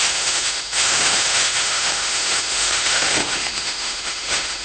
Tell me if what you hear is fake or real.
fake